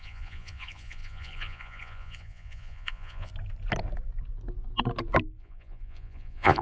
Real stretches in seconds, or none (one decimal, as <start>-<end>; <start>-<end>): 3.3-5.4